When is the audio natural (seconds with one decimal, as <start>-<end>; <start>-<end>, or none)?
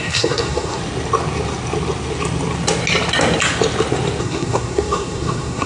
0.8-4.2